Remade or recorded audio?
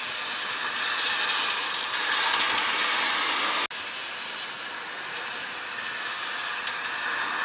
recorded